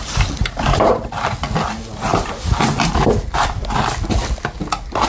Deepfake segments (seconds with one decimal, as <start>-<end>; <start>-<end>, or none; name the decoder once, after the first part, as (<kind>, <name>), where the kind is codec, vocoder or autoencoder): 0.4-1.1 (vocoder, BigVGAN v2); 2.1-3.1